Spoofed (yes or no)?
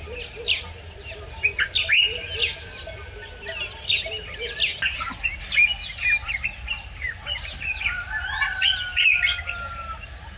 no